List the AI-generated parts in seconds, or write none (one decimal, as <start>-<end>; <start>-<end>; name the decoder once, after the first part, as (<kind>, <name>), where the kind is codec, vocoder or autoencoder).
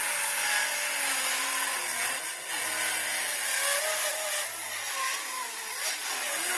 none